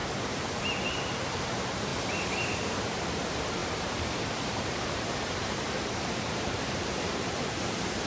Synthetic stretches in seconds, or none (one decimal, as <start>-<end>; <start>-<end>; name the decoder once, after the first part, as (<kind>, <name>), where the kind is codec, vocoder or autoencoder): 0.9-1.9 (vocoder, BigVGAN v2); 2.5-8.1